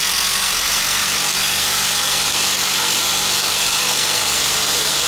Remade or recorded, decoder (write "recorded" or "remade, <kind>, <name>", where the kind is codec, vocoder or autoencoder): remade, codec, SNAC